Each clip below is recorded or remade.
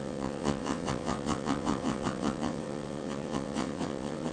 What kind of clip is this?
remade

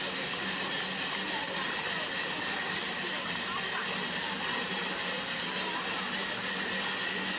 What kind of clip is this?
recorded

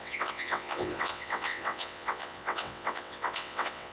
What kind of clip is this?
remade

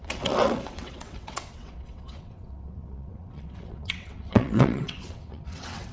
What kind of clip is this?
remade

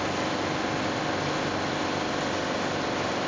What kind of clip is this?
recorded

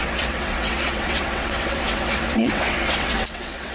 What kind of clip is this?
remade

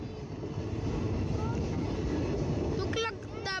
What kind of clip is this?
recorded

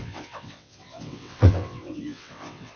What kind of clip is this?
remade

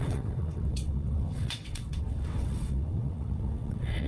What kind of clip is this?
remade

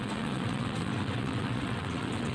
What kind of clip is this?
remade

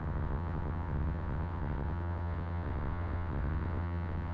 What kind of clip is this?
remade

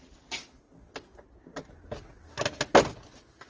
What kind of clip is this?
recorded